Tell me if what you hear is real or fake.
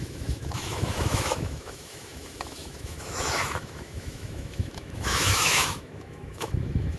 fake